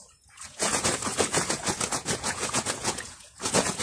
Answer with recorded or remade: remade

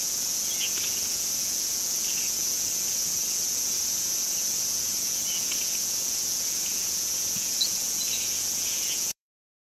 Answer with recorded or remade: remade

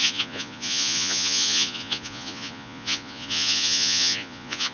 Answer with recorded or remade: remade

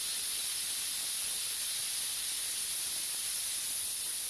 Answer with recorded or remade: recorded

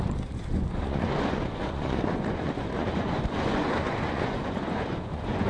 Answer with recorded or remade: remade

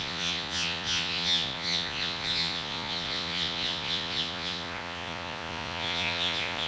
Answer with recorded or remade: remade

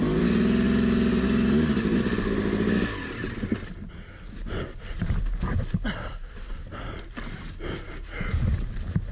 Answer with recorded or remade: recorded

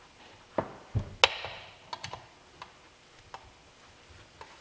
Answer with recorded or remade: recorded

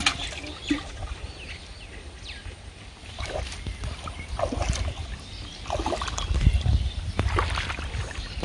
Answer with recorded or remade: recorded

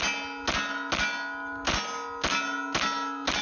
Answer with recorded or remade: recorded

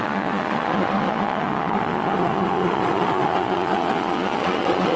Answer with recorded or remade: remade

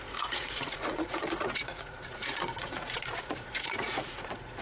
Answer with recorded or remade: remade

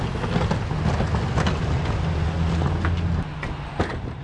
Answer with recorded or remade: recorded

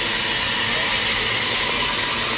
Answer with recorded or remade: recorded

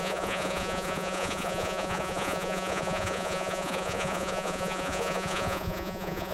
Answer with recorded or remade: remade